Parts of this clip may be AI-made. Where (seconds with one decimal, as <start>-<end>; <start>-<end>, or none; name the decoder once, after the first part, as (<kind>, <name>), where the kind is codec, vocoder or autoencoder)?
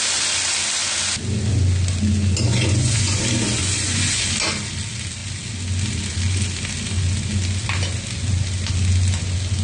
2.5-3.2 (vocoder, Vocos); 3.6-4.3